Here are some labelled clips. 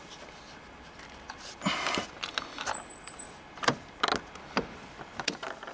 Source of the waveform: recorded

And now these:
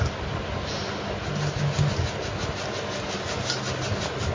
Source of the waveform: recorded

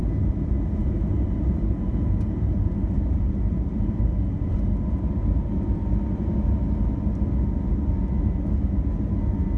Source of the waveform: recorded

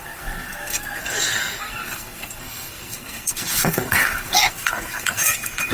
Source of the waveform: remade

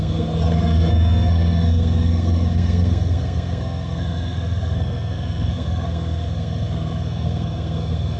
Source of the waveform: remade